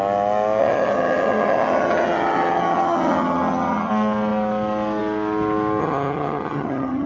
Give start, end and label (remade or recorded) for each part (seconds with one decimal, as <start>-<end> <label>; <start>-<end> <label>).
0.0-0.6 recorded; 0.6-3.9 remade; 3.9-5.8 recorded; 5.8-7.1 remade

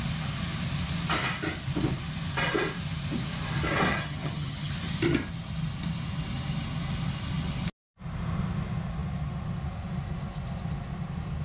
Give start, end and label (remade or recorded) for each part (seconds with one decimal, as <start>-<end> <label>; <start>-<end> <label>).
0.0-3.9 recorded; 3.9-4.7 remade; 4.7-11.4 recorded

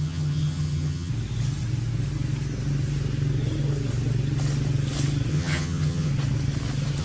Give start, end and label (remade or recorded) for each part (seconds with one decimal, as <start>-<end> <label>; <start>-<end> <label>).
0.0-1.1 remade; 1.1-5.3 recorded; 5.3-6.1 remade; 6.1-7.0 recorded

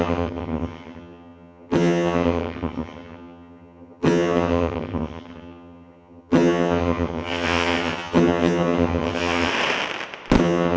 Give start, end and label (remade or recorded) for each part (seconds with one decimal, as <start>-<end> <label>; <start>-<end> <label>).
0.0-9.5 remade; 9.5-10.4 recorded; 10.4-10.8 remade